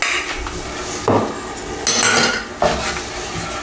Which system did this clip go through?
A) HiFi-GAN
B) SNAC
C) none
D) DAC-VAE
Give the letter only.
C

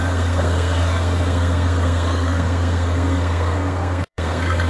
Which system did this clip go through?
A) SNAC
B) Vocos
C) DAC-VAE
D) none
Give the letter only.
A